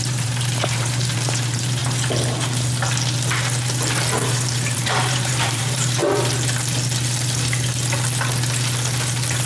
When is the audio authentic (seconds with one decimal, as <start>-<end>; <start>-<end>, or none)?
1.8-4.3; 6.0-9.5

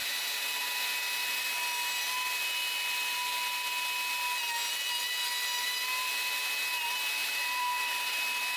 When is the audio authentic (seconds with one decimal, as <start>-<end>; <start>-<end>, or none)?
0.0-7.2; 8.2-8.6

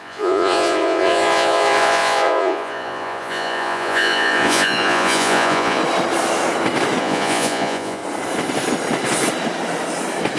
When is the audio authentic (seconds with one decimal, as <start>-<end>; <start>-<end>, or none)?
5.8-7.0; 8.0-10.4

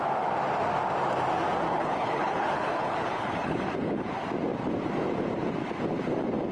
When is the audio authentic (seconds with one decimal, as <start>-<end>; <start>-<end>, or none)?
0.0-1.7; 4.1-6.5

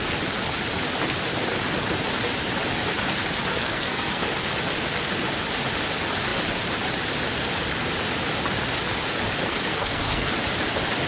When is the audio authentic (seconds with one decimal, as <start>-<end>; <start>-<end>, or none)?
0.0-3.5; 4.3-9.4; 10.3-11.1